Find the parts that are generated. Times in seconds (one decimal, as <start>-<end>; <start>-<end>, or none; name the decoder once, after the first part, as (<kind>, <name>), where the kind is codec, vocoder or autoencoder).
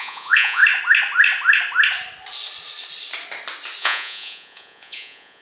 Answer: 0.0-0.6 (vocoder, Vocos); 3.8-5.4